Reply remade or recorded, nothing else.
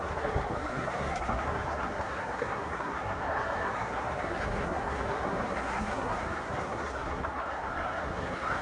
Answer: remade